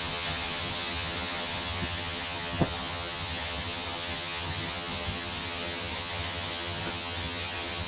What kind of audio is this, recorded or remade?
remade